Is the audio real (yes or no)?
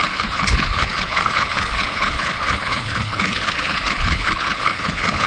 no